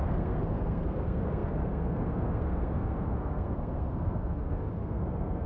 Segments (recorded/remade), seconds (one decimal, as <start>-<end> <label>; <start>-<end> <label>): 0.0-5.5 remade